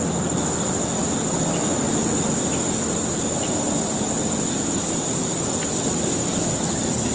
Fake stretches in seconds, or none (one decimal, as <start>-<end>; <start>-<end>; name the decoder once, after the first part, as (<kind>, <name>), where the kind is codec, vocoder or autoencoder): none